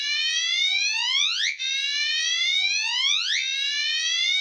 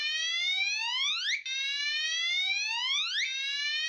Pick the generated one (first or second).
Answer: first